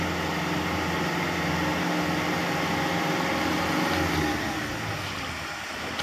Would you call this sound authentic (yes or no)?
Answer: yes